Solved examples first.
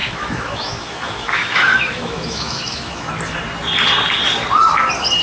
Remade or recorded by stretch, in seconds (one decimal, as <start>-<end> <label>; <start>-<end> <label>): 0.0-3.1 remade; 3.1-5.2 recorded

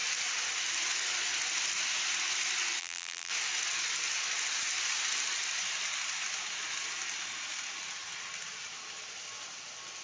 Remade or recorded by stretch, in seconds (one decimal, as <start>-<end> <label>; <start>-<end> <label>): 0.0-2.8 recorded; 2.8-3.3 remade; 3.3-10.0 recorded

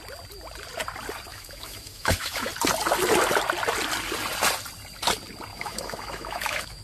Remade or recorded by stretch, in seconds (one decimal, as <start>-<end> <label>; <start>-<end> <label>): 0.0-1.3 recorded; 1.3-2.5 remade; 2.5-5.5 recorded; 5.5-6.8 remade

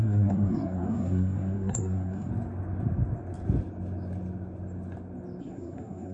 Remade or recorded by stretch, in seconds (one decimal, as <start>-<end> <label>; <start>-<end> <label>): 0.0-2.3 remade; 2.3-5.4 recorded; 5.4-6.1 remade